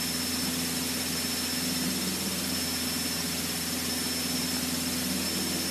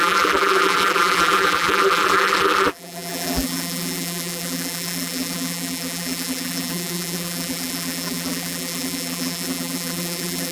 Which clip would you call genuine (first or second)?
first